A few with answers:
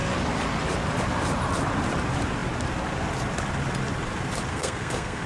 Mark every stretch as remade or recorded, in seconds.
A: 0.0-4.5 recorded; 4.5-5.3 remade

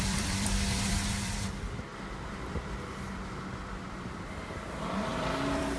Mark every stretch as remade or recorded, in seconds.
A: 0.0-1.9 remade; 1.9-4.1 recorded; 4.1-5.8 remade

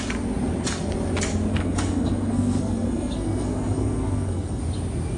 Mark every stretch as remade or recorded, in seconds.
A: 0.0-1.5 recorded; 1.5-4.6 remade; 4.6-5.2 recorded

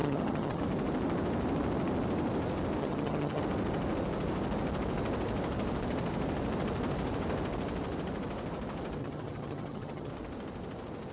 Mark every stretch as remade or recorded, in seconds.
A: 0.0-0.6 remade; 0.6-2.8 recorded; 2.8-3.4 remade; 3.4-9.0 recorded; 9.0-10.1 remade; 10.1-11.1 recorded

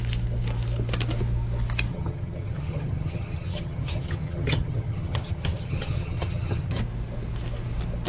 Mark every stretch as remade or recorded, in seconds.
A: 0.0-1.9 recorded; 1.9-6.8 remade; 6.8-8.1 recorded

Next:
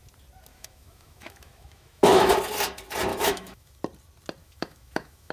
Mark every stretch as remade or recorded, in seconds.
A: 0.0-0.5 recorded; 0.5-2.3 remade; 2.3-3.1 recorded; 3.1-3.8 remade; 3.8-4.4 recorded; 4.4-5.3 remade